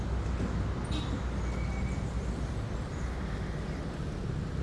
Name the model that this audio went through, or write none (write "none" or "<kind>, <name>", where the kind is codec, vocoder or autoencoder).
none